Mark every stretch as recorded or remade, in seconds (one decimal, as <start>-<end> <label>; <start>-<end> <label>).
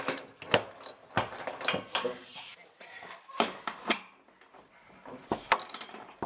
0.0-2.2 recorded; 2.2-6.3 remade